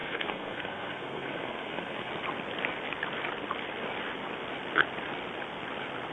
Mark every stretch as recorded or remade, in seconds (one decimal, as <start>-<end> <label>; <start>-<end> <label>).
0.0-2.1 remade; 2.1-6.1 recorded